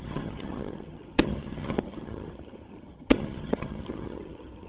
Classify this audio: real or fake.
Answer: fake